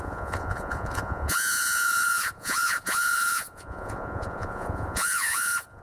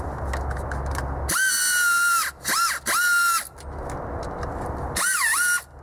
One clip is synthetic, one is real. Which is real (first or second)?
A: second